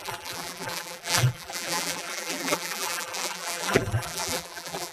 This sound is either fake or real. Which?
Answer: fake